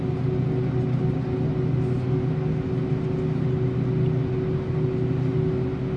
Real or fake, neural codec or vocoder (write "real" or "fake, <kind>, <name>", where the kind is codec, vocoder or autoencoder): real